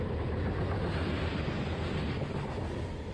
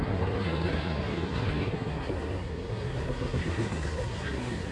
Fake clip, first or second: second